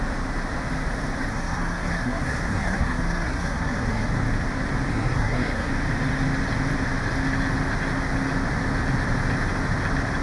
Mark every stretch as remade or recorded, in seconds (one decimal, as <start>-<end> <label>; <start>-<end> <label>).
0.0-1.3 recorded; 1.3-4.1 remade; 4.1-4.9 recorded; 4.9-5.7 remade; 5.7-10.2 recorded